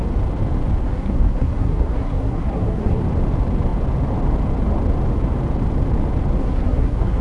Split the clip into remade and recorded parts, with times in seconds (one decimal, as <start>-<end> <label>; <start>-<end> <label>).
0.0-0.8 recorded; 0.8-3.0 remade; 3.0-6.4 recorded; 6.4-7.2 remade